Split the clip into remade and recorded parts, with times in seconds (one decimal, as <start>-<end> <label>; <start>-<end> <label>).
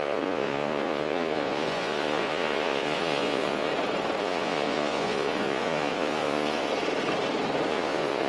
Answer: 0.0-3.7 remade; 3.7-4.2 recorded; 4.2-6.7 remade; 6.7-7.7 recorded; 7.7-8.3 remade